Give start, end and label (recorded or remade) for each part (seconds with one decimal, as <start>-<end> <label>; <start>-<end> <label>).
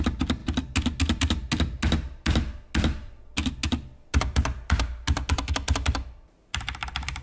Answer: 0.0-7.2 recorded